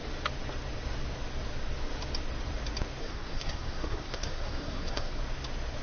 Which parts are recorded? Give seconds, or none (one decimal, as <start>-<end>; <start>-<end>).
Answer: 0.0-3.0; 5.2-5.8